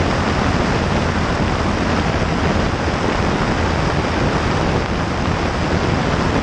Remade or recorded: recorded